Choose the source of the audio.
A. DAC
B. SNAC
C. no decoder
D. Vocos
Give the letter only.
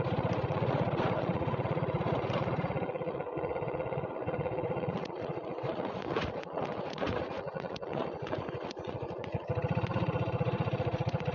D